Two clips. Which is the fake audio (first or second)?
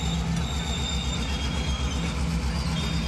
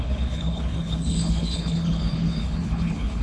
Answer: second